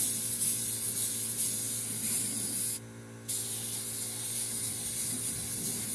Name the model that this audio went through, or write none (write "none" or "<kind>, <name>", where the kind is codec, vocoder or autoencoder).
none